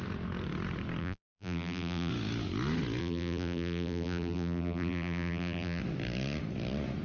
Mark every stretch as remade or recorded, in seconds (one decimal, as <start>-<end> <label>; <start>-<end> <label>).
0.0-1.0 recorded; 1.0-2.1 remade; 2.1-3.0 recorded; 3.0-5.8 remade; 5.8-7.0 recorded